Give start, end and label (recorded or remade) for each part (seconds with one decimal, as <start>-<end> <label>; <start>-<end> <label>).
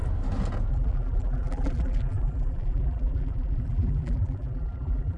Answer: 0.0-0.7 recorded; 0.7-5.2 remade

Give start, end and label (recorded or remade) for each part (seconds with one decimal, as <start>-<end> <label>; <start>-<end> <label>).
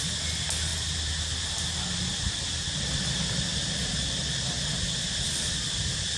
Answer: 0.0-0.7 recorded; 0.7-1.5 remade; 1.5-3.5 recorded; 3.5-4.1 remade; 4.1-6.2 recorded